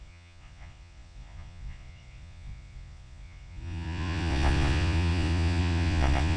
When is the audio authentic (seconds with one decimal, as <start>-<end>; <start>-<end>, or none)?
none